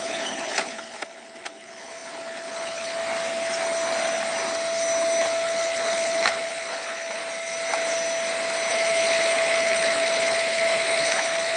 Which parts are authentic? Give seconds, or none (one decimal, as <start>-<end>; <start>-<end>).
3.0-5.2; 7.2-8.7

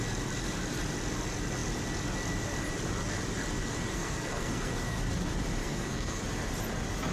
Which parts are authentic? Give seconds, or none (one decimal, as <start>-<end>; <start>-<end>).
0.0-3.9; 5.0-5.6; 6.2-7.1